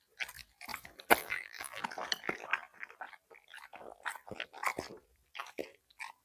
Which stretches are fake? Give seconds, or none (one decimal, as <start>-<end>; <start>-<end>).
1.2-1.8